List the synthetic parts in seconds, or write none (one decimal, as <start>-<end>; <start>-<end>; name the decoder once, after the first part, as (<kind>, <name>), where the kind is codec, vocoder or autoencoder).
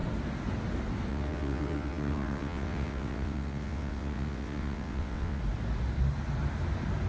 1.1-5.4 (vocoder, WaveNeXt)